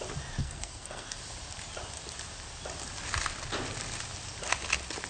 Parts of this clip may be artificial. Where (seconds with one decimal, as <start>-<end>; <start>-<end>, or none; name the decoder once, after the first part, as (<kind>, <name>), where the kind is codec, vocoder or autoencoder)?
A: 0.4-1.2 (codec, SNAC)